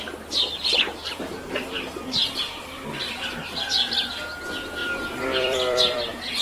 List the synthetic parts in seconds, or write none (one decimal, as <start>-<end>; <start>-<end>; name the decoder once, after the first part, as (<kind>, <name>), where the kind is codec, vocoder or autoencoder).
1.0-4.1 (vocoder, BigVGAN v2); 4.8-5.8